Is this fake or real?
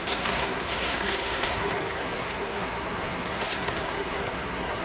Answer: fake